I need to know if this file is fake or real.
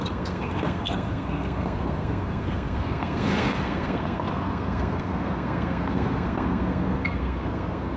fake